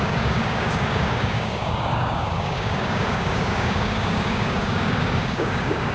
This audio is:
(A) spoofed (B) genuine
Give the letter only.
A